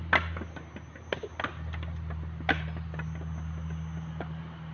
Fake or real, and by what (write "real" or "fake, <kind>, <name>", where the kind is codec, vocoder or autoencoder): real